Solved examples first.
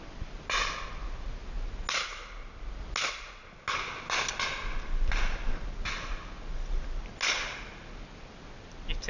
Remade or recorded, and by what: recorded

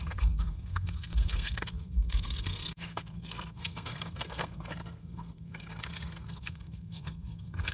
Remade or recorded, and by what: remade, codec, SNAC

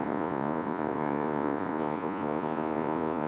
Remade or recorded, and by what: remade, vocoder, Vocos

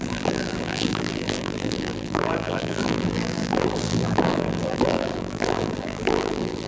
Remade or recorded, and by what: remade, vocoder, BigVGAN v2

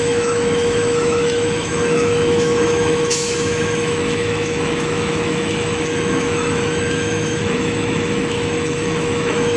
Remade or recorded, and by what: remade, autoencoder, DAC-VAE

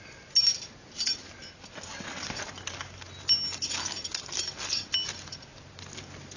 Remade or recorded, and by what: recorded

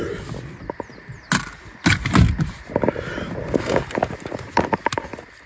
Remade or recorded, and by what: recorded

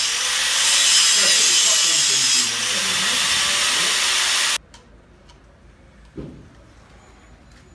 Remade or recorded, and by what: recorded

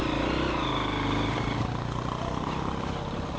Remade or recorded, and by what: recorded